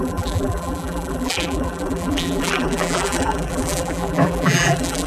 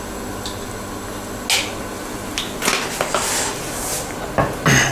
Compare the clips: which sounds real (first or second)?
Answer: second